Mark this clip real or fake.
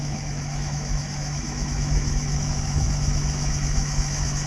fake